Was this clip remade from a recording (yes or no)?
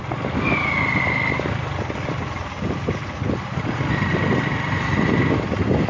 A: no